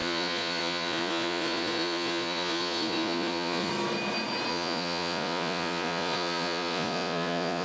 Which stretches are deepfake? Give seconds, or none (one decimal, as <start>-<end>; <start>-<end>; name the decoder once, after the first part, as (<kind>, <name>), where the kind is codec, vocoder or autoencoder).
0.0-3.7 (vocoder, Vocos); 4.5-7.6